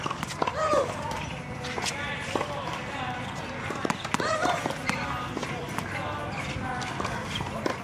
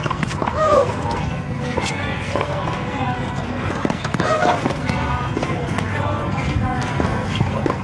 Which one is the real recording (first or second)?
first